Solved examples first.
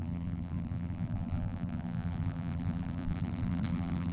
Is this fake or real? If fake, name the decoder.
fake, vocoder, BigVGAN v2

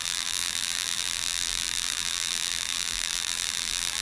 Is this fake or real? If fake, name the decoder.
fake, vocoder, BigVGAN v2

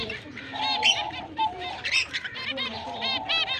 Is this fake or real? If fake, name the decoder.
fake, vocoder, BigVGAN v2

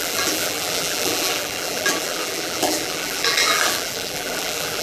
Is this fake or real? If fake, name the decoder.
fake, vocoder, BigVGAN v2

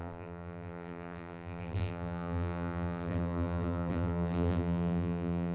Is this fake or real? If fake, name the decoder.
fake, vocoder, BigVGAN v2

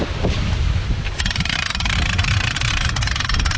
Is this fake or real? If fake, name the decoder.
fake, vocoder, BigVGAN v2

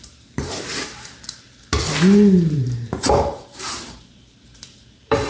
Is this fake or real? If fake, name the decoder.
fake, vocoder, BigVGAN v2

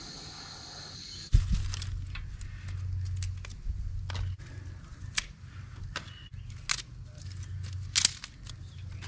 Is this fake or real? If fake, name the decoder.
real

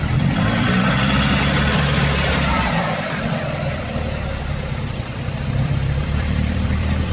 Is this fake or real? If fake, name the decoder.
fake, vocoder, BigVGAN v2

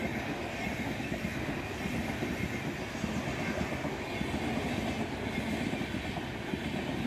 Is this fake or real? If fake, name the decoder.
real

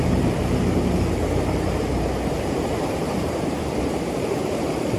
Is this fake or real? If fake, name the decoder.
fake, vocoder, BigVGAN v2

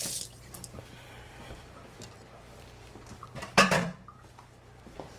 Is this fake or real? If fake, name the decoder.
fake, vocoder, BigVGAN v2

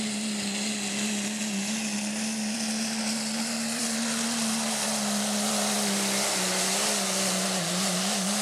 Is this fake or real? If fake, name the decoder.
fake, vocoder, BigVGAN v2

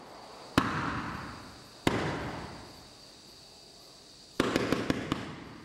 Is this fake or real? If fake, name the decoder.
real